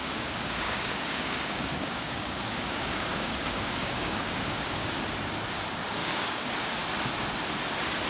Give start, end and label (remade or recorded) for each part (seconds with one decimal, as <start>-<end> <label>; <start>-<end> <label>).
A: 0.0-4.9 remade; 4.9-6.0 recorded; 6.0-6.5 remade; 6.5-8.1 recorded